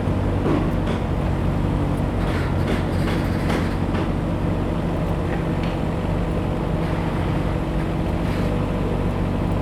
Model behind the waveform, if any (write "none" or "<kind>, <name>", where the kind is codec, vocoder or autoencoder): none